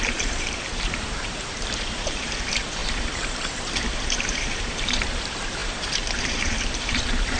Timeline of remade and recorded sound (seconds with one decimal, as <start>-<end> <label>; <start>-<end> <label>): 0.0-7.4 remade